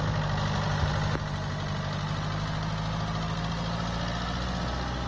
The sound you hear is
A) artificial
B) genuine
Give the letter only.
B